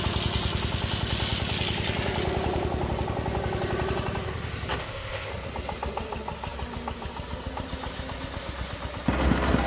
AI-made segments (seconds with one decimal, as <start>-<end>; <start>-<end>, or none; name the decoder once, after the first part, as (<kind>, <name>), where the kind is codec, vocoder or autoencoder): 4.8-5.3 (codec, ZipCodec)